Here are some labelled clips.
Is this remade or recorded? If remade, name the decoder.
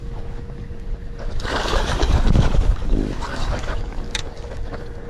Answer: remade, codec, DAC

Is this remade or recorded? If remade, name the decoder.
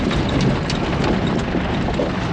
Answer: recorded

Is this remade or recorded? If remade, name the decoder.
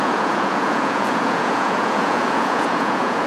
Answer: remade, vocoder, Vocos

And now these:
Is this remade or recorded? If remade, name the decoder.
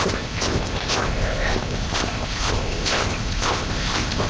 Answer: remade, codec, ZipCodec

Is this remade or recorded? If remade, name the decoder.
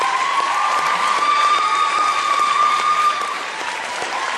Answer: remade, vocoder, BigVGAN v2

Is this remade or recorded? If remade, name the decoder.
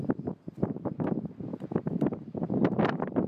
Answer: recorded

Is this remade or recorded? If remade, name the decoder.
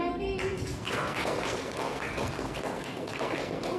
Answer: remade, codec, SNAC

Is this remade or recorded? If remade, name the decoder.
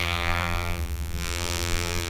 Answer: remade, vocoder, BigVGAN v2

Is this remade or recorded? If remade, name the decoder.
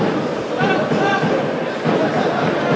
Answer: recorded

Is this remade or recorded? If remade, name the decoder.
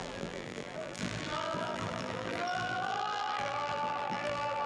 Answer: remade, vocoder, BigVGAN v2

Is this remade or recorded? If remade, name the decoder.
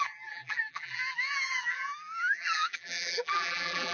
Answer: remade, vocoder, BigVGAN v2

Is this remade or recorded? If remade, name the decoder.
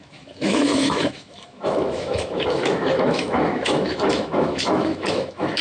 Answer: remade, autoencoder, DAC-VAE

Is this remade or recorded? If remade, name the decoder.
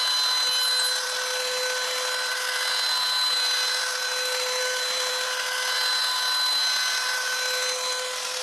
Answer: recorded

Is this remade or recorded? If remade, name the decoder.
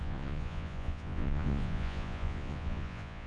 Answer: remade, vocoder, Vocos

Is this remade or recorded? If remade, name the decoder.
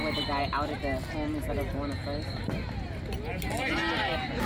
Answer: recorded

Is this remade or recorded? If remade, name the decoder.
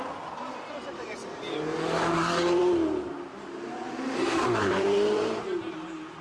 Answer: remade, vocoder, BigVGAN v2